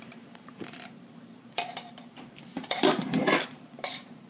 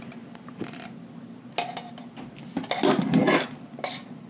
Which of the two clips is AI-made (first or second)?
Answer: first